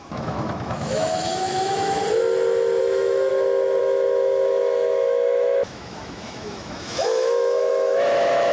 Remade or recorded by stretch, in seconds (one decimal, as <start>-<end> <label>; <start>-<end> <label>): 0.0-2.0 remade; 2.0-2.8 recorded; 2.8-3.3 remade; 3.3-3.8 recorded; 3.8-8.5 remade